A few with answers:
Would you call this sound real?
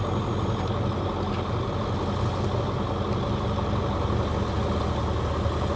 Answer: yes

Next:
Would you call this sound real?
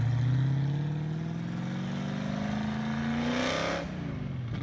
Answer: yes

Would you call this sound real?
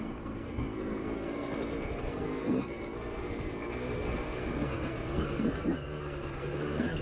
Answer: no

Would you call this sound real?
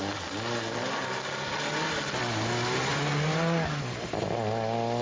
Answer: yes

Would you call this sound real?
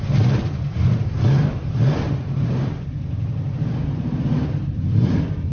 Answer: no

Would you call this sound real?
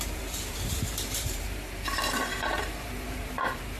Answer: no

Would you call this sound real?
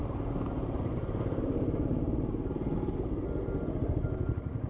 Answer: yes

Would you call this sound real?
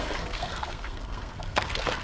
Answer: no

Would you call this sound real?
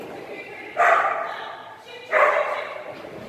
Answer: no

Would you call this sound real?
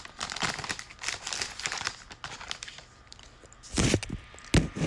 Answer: yes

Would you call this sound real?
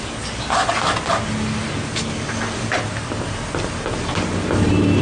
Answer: yes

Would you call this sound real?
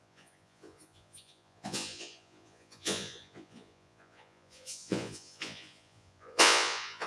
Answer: no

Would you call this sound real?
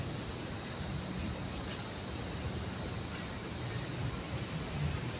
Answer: yes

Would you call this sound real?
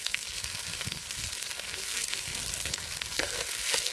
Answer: no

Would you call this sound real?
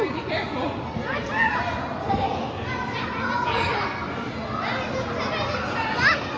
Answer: yes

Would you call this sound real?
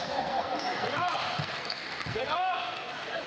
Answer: no